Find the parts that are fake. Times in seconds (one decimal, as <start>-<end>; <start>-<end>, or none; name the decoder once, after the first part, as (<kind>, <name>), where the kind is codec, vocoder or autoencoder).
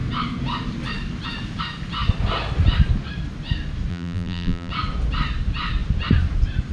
3.9-4.7 (vocoder, BigVGAN v2)